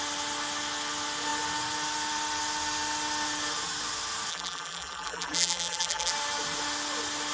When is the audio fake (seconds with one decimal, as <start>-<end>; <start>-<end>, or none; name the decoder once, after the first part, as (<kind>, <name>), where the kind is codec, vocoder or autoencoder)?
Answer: 4.3-6.1 (vocoder, BigVGAN v2)